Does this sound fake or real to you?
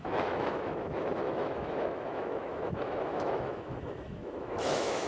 fake